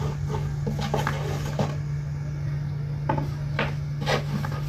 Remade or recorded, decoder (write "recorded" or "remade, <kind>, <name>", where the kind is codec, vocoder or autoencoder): recorded